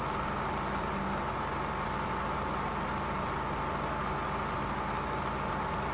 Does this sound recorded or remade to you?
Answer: recorded